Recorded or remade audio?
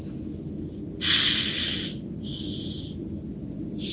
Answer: recorded